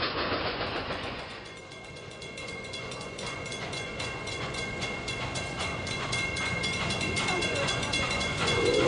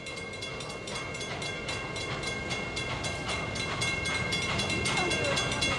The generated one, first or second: first